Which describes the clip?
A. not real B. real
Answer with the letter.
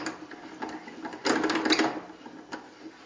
B